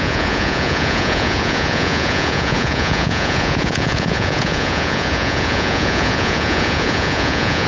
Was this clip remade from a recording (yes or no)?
yes